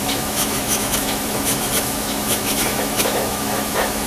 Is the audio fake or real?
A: fake